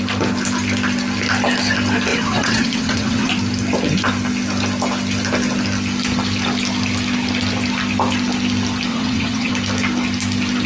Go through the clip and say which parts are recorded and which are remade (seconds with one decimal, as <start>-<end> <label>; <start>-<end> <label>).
0.0-2.1 recorded; 2.1-3.3 remade; 3.3-8.9 recorded; 8.9-9.5 remade; 9.5-10.7 recorded